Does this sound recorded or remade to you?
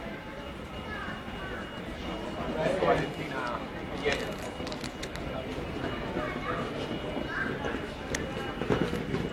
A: recorded